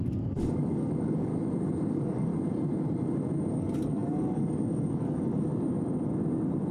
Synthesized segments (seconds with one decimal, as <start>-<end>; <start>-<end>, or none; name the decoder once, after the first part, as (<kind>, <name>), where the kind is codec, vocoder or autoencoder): 0.0-1.3 (codec, DAC); 1.9-2.3; 3.5-5.5